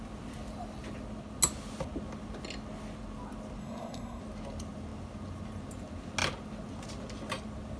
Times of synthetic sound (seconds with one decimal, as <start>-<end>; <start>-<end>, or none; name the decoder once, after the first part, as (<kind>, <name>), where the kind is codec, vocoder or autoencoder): 3.6-4.2 (codec, SNAC)